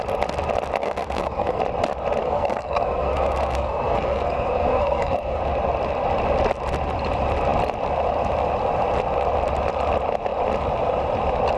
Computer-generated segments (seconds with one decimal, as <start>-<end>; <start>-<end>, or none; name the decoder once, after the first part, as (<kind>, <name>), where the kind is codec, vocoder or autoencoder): 0.8-1.6 (codec, SNAC); 2.2-5.4